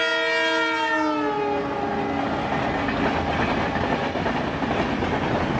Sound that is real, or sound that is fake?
real